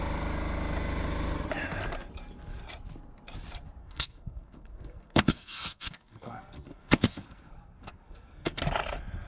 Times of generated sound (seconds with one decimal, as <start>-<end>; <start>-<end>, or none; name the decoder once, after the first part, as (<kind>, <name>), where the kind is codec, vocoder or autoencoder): 3.8-8.6 (codec, SNAC)